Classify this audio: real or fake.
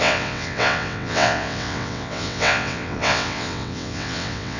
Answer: fake